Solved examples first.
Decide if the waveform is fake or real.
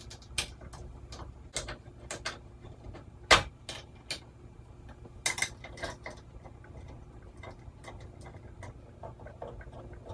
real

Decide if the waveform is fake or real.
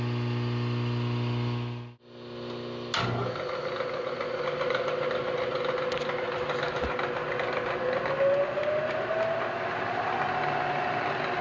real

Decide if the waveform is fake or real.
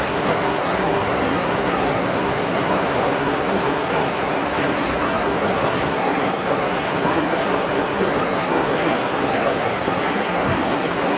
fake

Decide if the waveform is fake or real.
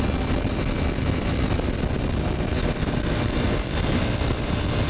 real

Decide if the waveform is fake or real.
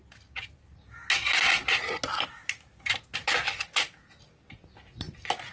real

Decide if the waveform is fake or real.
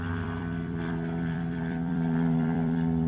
fake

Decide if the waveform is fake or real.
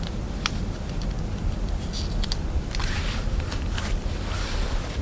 fake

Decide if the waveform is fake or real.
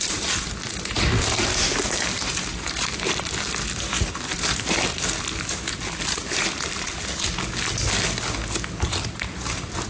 real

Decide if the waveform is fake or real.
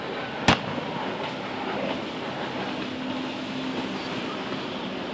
real